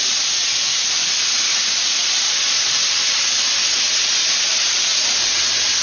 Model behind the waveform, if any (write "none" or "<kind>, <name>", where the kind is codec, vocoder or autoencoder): none